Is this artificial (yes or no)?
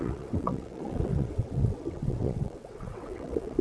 yes